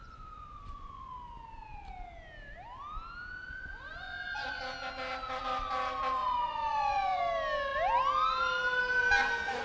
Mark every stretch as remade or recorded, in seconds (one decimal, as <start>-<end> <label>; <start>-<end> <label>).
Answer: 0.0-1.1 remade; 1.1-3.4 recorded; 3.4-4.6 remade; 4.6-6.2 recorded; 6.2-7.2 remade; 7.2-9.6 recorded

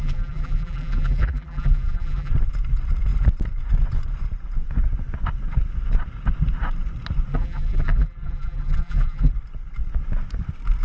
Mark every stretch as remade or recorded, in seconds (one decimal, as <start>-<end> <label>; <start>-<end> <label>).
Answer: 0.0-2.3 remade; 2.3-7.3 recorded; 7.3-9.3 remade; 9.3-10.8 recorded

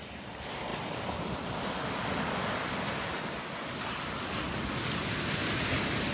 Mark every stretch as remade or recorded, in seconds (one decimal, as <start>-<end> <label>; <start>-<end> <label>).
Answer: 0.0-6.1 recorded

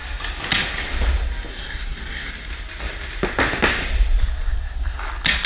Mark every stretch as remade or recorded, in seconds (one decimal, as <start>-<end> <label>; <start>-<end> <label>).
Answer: 0.0-1.5 recorded; 1.5-2.3 remade; 2.3-5.5 recorded

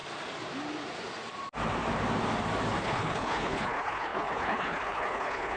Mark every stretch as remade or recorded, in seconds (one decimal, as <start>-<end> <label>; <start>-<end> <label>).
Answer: 0.0-2.8 recorded; 2.8-5.6 remade

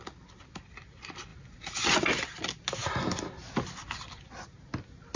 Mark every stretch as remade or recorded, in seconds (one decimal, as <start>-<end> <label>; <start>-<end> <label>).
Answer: 0.0-5.2 recorded

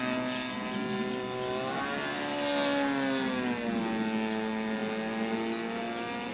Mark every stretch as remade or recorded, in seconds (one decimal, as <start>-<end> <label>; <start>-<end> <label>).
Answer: 0.0-6.3 recorded

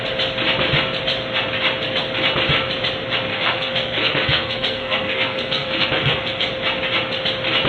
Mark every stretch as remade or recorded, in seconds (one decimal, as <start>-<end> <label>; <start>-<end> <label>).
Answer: 0.0-3.3 recorded; 3.3-6.5 remade; 6.5-7.7 recorded